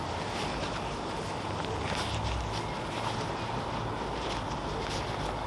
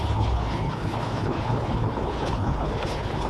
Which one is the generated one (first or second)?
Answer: second